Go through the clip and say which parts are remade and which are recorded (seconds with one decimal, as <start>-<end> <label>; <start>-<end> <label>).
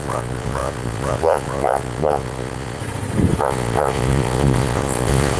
0.0-2.8 remade; 2.8-3.4 recorded; 3.4-5.4 remade